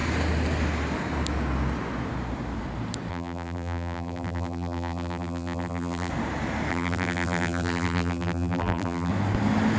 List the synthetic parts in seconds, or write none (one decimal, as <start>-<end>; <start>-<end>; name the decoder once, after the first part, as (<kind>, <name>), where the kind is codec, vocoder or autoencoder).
3.1-6.1 (vocoder, BigVGAN v2); 6.7-9.1